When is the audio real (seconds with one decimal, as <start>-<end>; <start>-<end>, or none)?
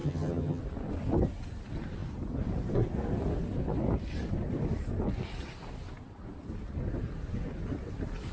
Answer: 0.6-8.3